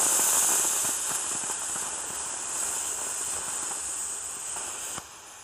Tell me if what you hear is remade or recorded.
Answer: recorded